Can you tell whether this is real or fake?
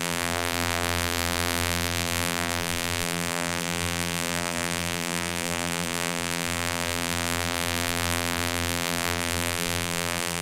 fake